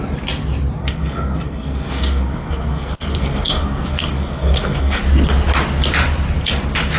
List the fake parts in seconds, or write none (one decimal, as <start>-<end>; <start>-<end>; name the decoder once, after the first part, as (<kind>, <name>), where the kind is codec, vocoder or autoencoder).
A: 0.8-5.0 (codec, SNAC)